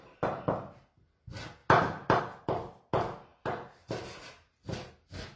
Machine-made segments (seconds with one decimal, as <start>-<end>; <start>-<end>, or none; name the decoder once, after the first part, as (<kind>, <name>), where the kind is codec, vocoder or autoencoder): none